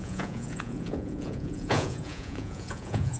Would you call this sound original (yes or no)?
no